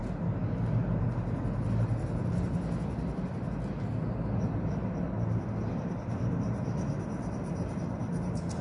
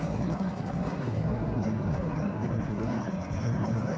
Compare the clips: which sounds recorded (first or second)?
first